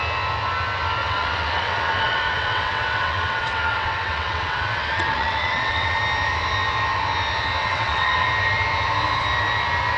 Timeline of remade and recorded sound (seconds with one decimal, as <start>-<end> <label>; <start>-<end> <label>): 0.0-1.0 recorded; 1.0-6.0 remade; 6.0-7.6 recorded; 7.6-8.3 remade; 8.3-10.0 recorded